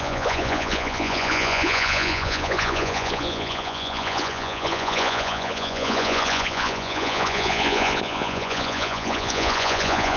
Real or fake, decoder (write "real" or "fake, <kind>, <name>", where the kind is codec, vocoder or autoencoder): fake, vocoder, Vocos